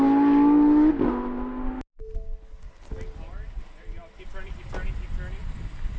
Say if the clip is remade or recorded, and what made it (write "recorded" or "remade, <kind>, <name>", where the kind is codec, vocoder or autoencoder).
recorded